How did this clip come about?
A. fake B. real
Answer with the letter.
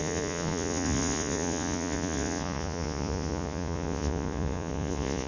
A